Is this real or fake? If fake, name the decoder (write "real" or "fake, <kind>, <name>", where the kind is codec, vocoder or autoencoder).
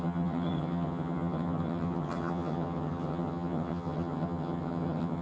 fake, vocoder, HiFi-GAN